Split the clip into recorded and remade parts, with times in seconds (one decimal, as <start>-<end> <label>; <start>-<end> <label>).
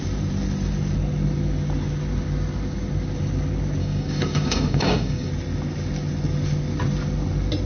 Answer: 0.0-3.8 recorded; 3.8-5.3 remade; 5.3-7.7 recorded